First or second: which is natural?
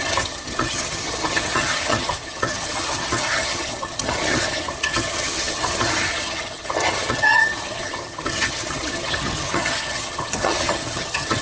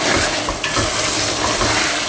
second